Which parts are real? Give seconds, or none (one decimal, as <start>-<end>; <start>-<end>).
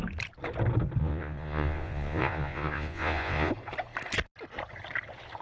0.0-1.0; 3.5-5.4